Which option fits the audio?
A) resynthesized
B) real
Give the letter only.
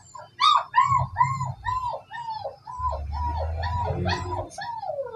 B